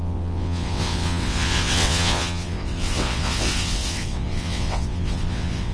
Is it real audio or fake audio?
fake